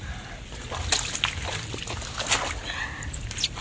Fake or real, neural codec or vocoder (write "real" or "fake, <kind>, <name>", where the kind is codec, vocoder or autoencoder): real